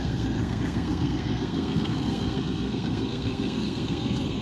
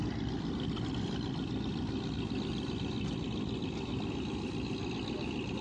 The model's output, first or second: first